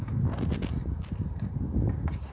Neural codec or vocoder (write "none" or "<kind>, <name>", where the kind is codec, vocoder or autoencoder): none